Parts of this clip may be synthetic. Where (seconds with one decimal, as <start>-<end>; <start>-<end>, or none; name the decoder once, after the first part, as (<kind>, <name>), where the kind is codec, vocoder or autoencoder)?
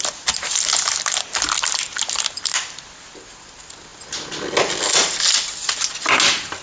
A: none